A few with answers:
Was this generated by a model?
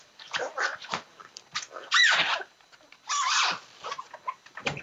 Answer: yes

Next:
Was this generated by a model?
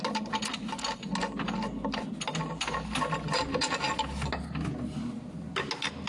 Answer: no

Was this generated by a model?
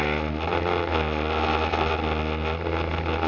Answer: no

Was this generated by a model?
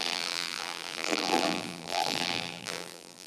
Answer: yes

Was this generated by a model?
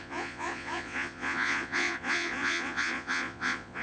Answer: yes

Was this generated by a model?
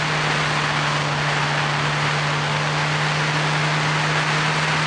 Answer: no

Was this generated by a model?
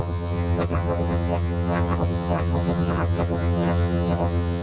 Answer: yes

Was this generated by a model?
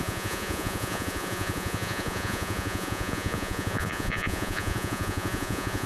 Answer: yes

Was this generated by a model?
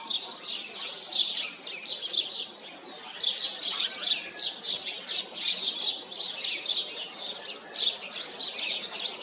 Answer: no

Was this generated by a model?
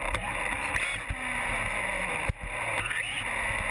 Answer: no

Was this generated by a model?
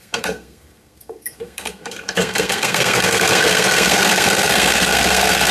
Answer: yes